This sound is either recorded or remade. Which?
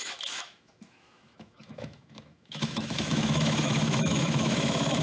remade